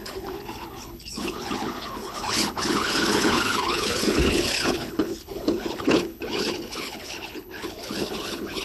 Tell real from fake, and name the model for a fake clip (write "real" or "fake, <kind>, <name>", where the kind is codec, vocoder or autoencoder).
fake, codec, HILCodec